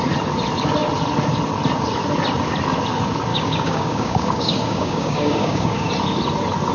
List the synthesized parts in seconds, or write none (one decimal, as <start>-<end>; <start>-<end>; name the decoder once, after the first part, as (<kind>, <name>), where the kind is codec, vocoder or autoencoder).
3.3-5.9 (codec, DAC)